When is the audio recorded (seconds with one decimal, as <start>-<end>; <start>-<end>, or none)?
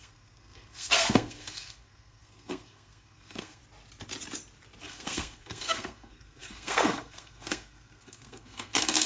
3.6-4.8